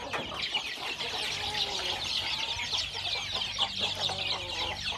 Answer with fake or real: real